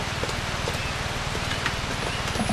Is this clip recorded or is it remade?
recorded